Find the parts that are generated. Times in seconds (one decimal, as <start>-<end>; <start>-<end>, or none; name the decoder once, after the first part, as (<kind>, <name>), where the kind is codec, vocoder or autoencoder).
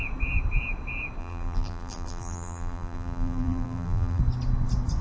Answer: 1.2-4.2 (vocoder, BigVGAN v2)